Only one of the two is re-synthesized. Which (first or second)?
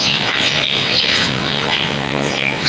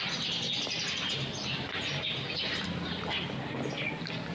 first